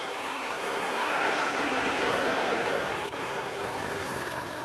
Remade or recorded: remade